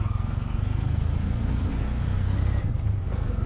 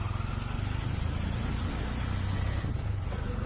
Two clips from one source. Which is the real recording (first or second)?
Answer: second